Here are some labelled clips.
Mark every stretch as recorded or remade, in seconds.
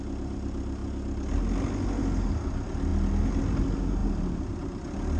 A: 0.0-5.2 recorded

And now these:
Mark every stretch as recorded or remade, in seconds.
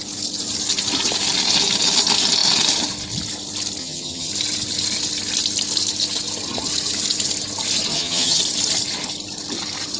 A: 0.0-3.8 recorded; 3.8-4.3 remade; 4.3-7.9 recorded; 7.9-8.4 remade; 8.4-10.0 recorded